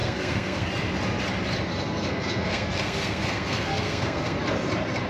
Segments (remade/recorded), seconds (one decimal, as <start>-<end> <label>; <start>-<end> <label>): 0.0-0.7 remade; 0.7-1.7 recorded; 1.7-4.4 remade; 4.4-5.1 recorded